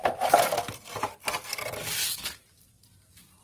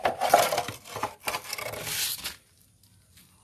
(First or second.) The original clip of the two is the second